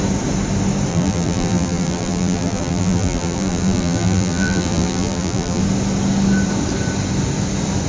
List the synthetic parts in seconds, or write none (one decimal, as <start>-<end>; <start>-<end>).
0.9-5.6